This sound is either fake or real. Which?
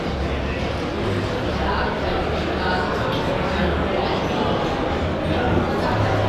real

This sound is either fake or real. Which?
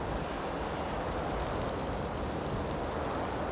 real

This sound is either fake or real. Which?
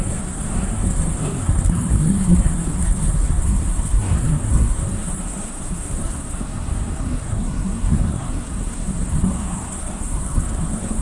fake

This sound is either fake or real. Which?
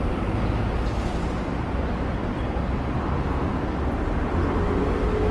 real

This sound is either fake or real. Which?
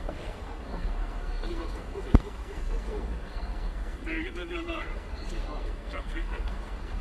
fake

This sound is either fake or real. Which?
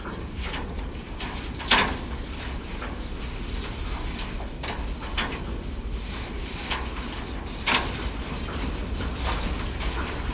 real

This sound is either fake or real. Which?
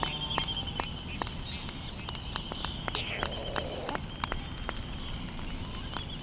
real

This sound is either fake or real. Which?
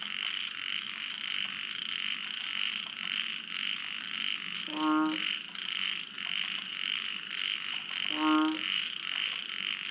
real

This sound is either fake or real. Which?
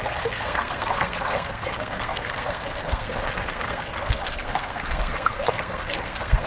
fake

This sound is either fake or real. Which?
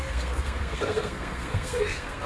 fake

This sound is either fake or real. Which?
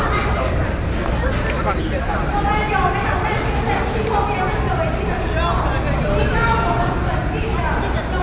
real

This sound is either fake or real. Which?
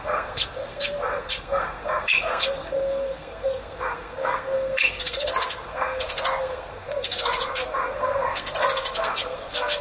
fake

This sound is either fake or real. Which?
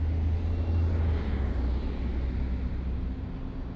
real